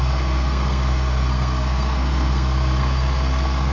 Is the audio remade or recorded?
remade